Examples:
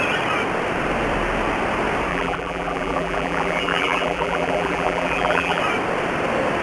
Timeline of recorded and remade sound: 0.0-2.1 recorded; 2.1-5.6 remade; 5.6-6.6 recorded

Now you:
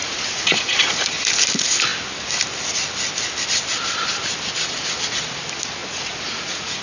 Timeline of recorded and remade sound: 0.0-1.1 remade; 1.1-5.8 recorded; 5.8-6.8 remade

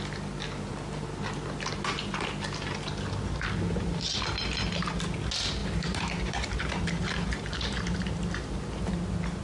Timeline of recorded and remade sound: 0.0-5.6 recorded; 5.6-8.9 remade; 8.9-9.4 recorded

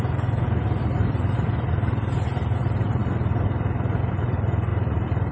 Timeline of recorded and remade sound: 0.0-3.0 remade; 3.0-4.0 recorded; 4.0-5.3 remade

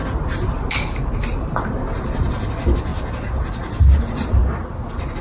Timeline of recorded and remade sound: 0.0-0.7 recorded; 0.7-2.9 remade; 2.9-3.5 recorded; 3.5-4.4 remade; 4.4-5.2 recorded

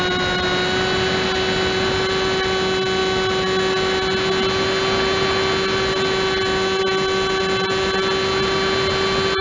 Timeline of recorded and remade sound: 0.0-9.4 recorded

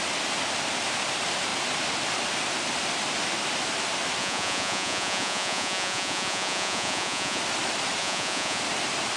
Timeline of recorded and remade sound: 0.0-4.2 recorded; 4.2-7.4 remade; 7.4-8.0 recorded; 8.0-8.6 remade; 8.6-9.2 recorded